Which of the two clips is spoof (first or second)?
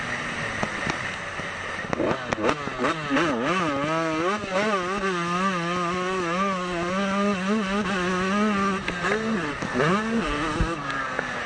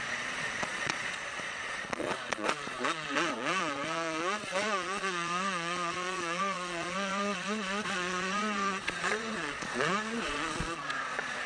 second